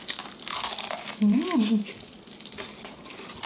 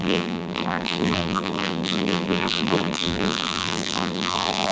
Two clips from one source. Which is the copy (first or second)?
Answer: second